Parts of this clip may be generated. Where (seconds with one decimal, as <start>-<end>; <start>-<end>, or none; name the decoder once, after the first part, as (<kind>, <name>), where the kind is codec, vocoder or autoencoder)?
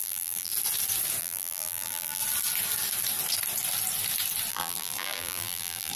0.0-0.5 (vocoder, BigVGAN v2); 1.2-2.2; 4.5-6.0